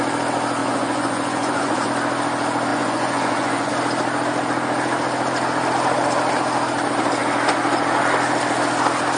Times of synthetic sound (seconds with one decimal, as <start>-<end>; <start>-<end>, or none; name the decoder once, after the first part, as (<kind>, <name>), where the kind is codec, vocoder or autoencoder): 0.6-1.9 (vocoder, Vocos); 2.7-3.7